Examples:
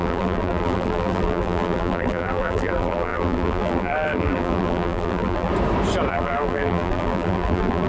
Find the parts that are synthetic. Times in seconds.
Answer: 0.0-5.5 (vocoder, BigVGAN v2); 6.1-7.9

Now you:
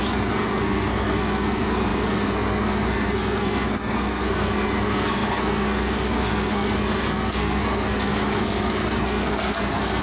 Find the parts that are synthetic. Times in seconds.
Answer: 0.0-10.0 (codec, SNAC)

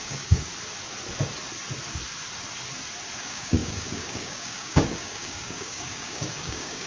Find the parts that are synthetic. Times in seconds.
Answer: 0.0-0.5 (codec, DAC); 3.2-6.9

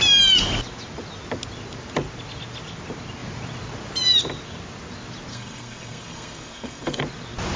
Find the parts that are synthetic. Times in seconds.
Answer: 5.3-7.0 (codec, SNAC)

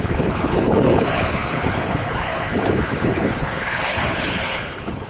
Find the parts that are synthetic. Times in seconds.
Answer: 0.0-5.1 (codec, HILCodec)

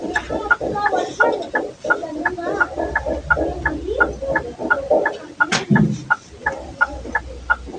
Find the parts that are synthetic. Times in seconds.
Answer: 0.0-1.2 (vocoder, BigVGAN v2); 6.4-7.1